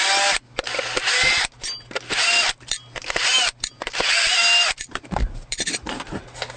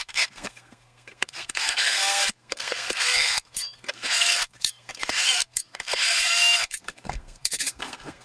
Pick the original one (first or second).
first